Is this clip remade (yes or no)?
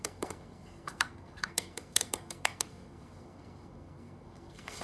yes